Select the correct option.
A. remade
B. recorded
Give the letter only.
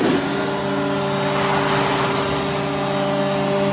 B